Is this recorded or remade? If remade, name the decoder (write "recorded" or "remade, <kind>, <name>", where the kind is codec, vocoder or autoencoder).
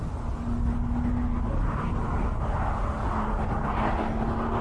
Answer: recorded